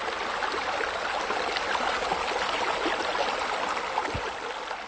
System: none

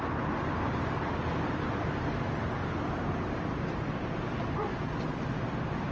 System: none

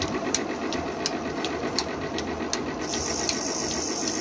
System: none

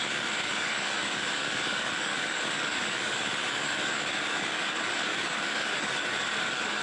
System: codec, DAC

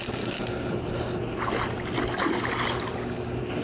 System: none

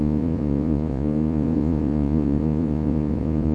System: vocoder, Vocos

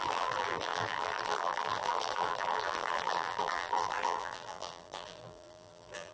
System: vocoder, BigVGAN v2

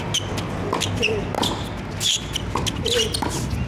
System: none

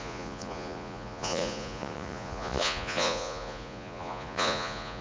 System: vocoder, Vocos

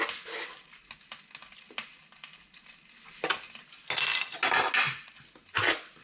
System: none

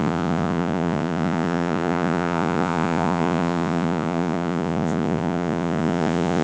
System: vocoder, Vocos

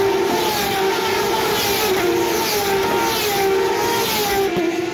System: none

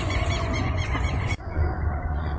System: vocoder, Vocos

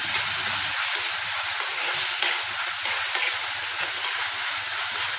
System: none